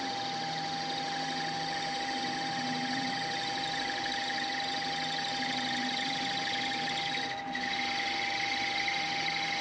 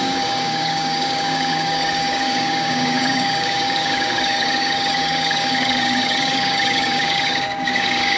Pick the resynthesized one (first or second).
second